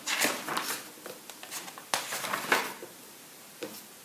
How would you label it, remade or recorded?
recorded